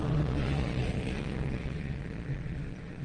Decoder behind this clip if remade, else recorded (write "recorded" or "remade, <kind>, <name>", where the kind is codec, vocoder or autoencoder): remade, vocoder, Vocos